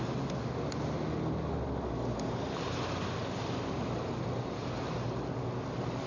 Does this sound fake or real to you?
real